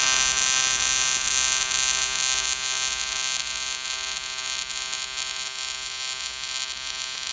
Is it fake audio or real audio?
real